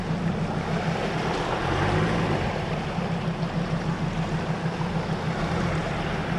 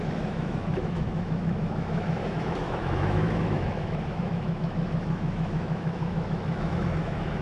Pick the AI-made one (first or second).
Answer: second